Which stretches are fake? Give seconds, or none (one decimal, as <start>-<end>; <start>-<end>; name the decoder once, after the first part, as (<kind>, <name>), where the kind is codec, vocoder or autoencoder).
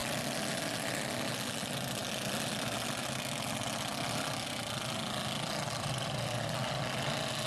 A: none